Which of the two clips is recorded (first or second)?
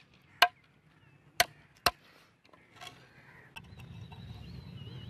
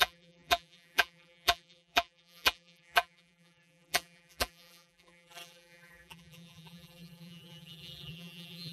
first